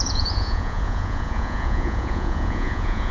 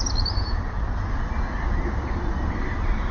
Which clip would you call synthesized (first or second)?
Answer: first